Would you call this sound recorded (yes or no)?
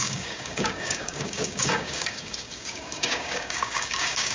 no